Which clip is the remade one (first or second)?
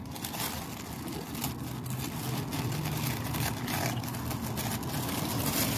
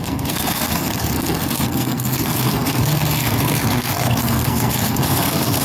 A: second